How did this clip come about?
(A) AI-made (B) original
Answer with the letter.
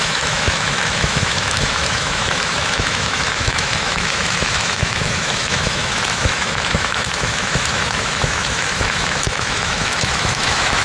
A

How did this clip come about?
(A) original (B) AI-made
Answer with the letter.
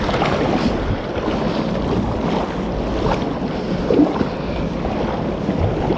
A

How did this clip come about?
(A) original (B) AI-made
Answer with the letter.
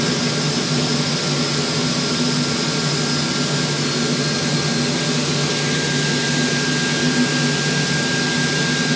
A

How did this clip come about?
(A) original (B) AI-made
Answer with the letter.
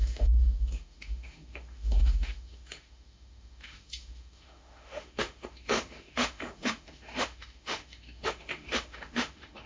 B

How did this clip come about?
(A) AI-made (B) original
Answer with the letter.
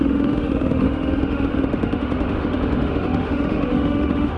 A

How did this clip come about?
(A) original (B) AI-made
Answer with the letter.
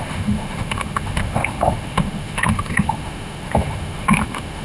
B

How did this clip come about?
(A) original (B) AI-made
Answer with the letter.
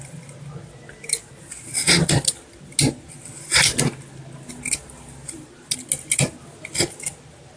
A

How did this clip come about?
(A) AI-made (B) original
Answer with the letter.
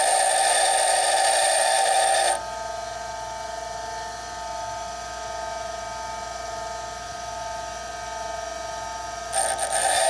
B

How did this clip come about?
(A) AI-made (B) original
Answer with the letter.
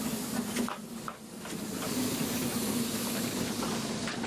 B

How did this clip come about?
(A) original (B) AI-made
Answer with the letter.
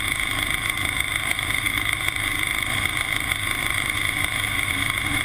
B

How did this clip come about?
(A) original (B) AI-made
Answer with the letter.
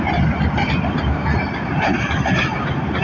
A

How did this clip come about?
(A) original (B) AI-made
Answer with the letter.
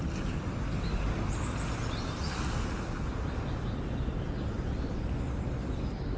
A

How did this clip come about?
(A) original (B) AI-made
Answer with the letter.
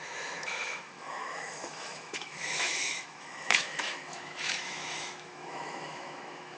B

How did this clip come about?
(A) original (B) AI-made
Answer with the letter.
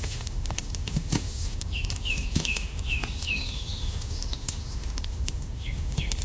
B